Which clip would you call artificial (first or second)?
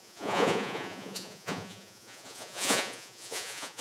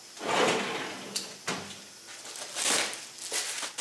first